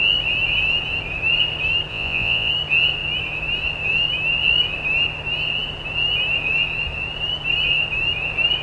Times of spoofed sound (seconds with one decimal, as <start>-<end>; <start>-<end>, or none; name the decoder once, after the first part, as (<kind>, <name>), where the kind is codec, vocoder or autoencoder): 1.9-2.5 (vocoder, Vocos)